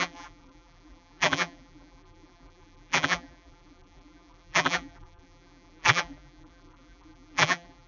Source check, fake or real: fake